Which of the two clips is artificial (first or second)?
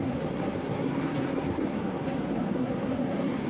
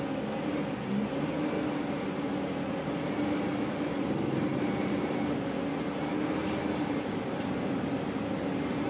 first